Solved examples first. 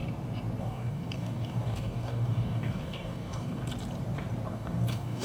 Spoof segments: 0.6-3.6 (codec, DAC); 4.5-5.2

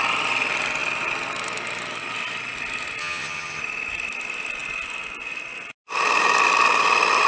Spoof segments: 3.0-3.6 (vocoder, HiFi-GAN)

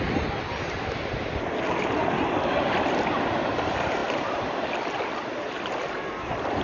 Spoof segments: none

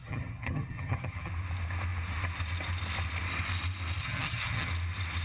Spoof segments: 0.0-1.3 (vocoder, HiFi-GAN); 4.0-4.7

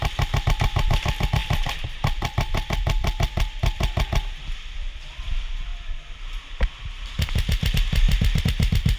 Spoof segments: 0.0-5.7 (vocoder, BigVGAN v2); 8.4-9.0

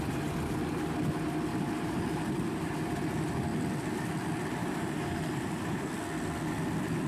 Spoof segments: 1.5-3.0 (vocoder, BigVGAN v2); 4.6-5.9